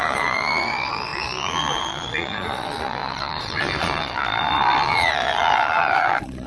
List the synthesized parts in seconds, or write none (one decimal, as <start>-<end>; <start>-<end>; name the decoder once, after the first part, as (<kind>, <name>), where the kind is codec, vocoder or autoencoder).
0.0-6.5 (vocoder, Vocos)